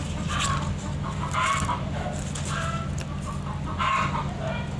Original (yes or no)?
yes